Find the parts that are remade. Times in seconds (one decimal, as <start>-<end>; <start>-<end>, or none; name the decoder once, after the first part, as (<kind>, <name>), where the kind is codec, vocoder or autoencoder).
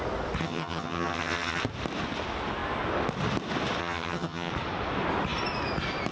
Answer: 0.4-1.6 (vocoder, HiFi-GAN); 3.8-4.5